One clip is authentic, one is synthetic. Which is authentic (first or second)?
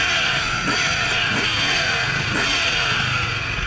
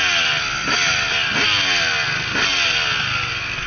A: second